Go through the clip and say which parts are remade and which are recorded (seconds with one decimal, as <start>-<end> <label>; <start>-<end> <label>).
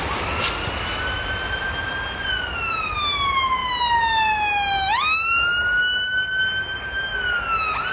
0.0-7.9 recorded